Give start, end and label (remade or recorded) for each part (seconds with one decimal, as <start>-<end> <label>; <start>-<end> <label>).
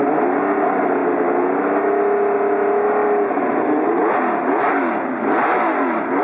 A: 0.0-6.2 recorded